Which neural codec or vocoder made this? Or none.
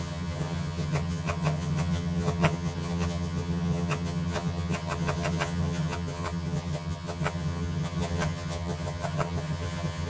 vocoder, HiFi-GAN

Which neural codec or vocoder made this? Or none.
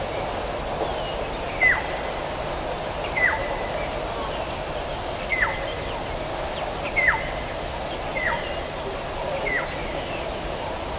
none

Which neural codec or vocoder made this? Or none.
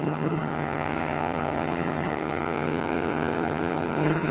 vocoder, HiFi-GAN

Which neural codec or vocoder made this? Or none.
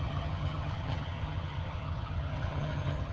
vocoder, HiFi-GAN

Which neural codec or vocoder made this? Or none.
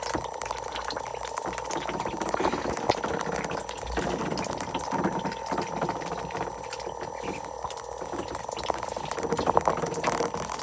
none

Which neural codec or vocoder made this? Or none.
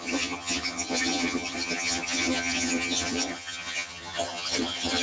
vocoder, HiFi-GAN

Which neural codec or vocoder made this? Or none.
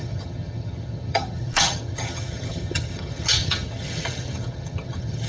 vocoder, HiFi-GAN